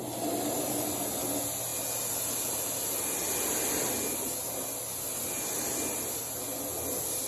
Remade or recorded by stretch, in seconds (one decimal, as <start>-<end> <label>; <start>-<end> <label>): 0.0-7.3 recorded